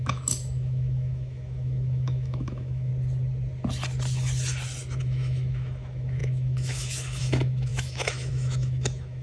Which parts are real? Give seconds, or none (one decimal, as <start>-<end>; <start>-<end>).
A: 2.9-5.0